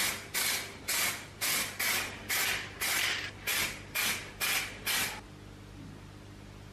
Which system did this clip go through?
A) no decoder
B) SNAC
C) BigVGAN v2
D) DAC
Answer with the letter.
A